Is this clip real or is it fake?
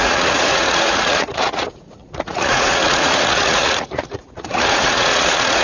fake